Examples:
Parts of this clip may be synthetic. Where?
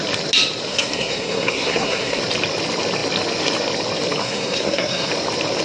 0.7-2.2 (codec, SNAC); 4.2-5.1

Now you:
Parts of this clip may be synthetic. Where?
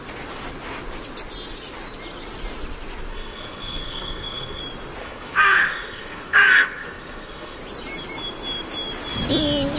3.1-4.6 (codec, SNAC); 5.0-7.6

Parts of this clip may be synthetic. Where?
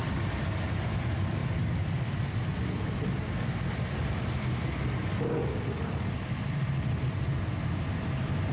none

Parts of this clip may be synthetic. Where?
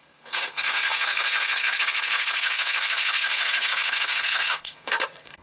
0.0-5.4 (codec, SNAC)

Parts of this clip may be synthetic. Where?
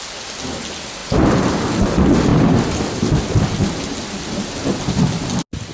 none